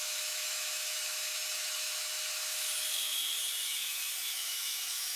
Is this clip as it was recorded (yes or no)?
no